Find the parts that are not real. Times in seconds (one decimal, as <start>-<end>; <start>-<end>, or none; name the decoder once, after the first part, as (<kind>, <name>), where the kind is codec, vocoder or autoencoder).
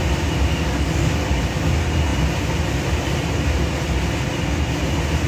0.5-1.4 (codec, DAC)